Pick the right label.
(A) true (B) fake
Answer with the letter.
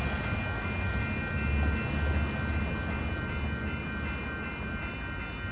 A